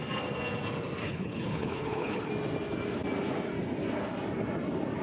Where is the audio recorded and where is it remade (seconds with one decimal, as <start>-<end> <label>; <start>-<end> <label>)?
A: 0.0-1.0 recorded; 1.0-2.3 remade; 2.3-5.0 recorded